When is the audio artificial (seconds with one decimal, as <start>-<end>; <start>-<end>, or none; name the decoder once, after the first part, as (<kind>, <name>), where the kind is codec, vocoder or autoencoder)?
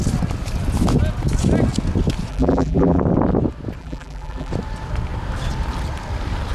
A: 2.3-3.0 (vocoder, BigVGAN v2); 3.8-4.5